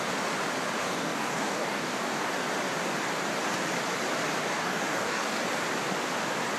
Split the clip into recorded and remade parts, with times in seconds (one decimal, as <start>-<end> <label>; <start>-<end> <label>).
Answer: 0.0-0.8 recorded; 0.8-2.3 remade; 2.3-4.4 recorded; 4.4-5.4 remade; 5.4-6.6 recorded